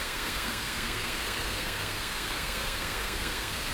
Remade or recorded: remade